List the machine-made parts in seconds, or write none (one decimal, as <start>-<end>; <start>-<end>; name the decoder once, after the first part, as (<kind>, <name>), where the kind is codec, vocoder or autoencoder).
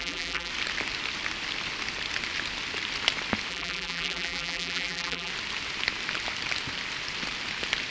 0.0-0.5 (vocoder, BigVGAN v2); 3.5-5.3